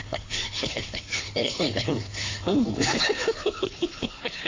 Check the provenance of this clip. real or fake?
fake